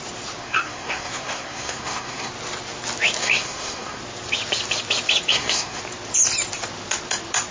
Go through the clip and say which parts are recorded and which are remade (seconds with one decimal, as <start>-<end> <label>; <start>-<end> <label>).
0.0-0.4 recorded; 0.4-2.3 remade; 2.3-3.2 recorded; 3.2-4.0 remade; 4.0-5.3 recorded; 5.3-5.8 remade; 5.8-7.5 recorded